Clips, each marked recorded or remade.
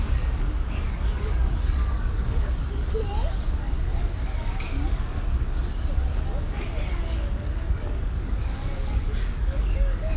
remade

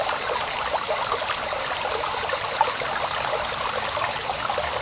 recorded